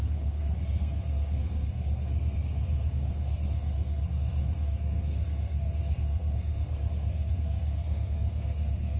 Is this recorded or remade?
remade